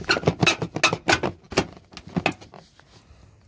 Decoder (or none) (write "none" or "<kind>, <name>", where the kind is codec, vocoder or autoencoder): none